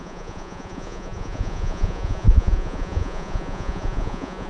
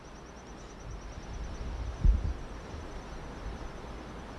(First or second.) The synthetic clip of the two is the first